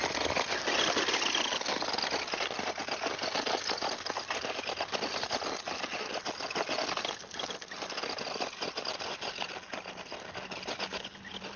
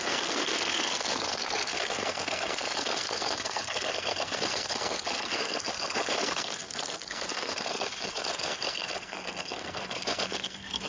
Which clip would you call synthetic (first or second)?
second